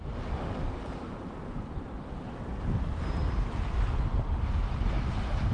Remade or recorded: remade